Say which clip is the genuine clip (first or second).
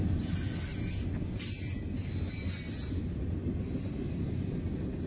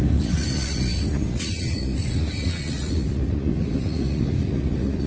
first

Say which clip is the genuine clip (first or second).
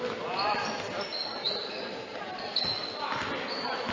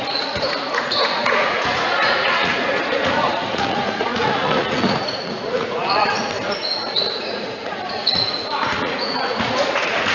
first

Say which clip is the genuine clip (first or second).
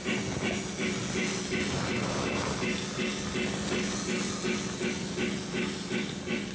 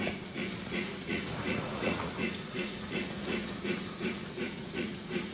first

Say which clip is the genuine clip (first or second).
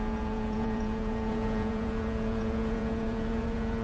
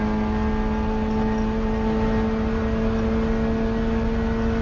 second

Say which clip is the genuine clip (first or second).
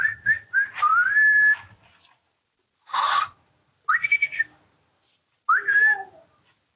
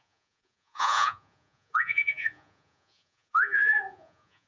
first